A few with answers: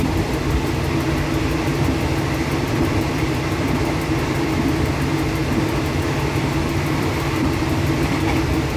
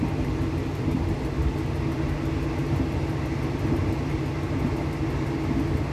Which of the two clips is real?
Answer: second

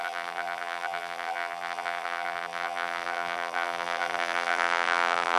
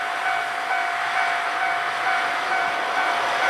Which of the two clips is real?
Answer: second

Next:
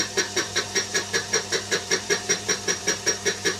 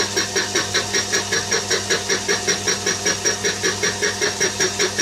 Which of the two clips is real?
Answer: second